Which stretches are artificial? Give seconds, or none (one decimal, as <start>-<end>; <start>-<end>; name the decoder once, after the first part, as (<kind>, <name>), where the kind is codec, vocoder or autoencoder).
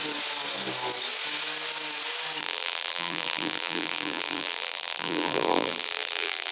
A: 2.4-6.5 (vocoder, BigVGAN v2)